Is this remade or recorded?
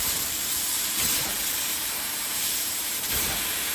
remade